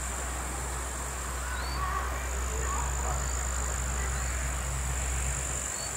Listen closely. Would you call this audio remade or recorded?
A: recorded